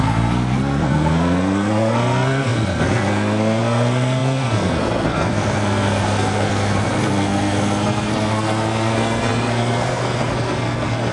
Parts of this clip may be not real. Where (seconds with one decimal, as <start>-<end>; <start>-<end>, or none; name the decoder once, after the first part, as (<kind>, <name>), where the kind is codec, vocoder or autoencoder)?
0.0-11.1 (codec, SNAC)